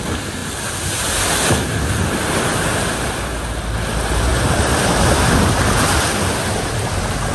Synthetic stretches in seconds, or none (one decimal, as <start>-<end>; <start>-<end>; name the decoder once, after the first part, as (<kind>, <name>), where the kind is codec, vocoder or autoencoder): none